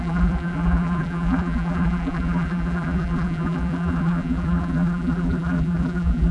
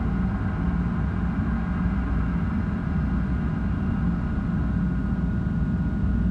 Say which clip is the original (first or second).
second